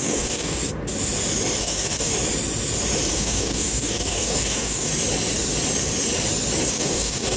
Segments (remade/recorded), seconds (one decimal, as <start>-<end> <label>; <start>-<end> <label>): 0.0-0.6 remade; 0.6-1.6 recorded; 1.6-2.1 remade; 2.1-3.1 recorded; 3.1-4.9 remade; 4.9-6.7 recorded; 6.7-7.4 remade